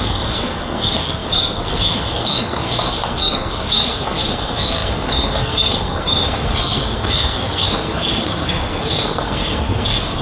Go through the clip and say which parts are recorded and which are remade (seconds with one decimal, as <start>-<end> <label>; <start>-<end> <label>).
0.0-10.2 remade